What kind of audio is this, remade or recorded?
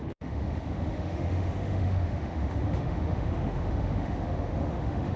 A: remade